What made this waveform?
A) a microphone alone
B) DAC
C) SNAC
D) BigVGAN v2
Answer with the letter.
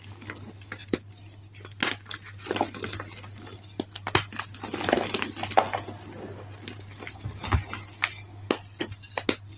A